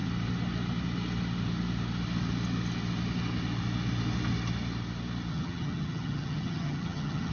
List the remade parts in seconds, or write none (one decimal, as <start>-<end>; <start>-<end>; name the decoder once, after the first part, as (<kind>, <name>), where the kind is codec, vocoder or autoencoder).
5.3-7.3 (vocoder, HiFi-GAN)